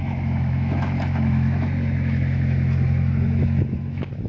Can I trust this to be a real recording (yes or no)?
no